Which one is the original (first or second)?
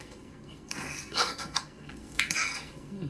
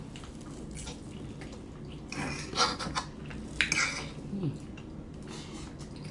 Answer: second